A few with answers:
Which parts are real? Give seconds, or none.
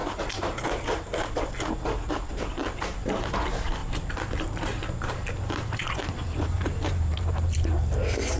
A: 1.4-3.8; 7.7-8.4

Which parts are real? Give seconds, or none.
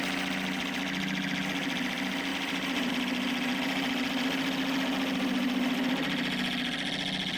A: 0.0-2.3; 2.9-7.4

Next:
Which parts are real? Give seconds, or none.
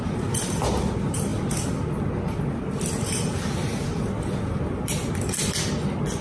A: 0.0-6.2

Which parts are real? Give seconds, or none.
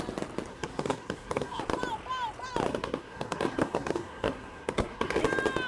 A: 0.0-0.5; 1.6-2.7; 5.2-5.7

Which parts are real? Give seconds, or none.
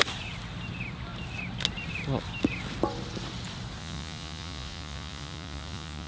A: 0.0-3.8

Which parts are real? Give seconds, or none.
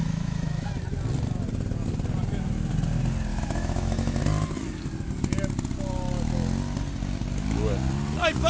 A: 0.7-3.3; 4.2-8.5